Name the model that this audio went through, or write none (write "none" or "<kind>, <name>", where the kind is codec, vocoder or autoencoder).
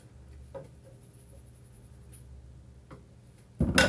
none